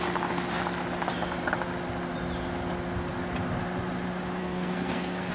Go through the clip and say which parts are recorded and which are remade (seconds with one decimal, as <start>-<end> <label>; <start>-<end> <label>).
0.0-4.4 recorded; 4.4-5.3 remade